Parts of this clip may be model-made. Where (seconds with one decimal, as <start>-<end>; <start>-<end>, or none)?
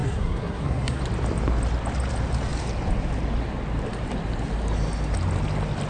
0.0-1.0